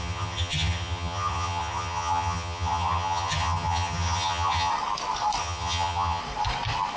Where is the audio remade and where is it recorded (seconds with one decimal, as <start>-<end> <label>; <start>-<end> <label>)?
0.0-4.7 remade; 4.7-5.4 recorded; 5.4-6.2 remade; 6.2-7.0 recorded